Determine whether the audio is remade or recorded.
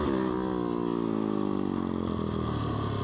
recorded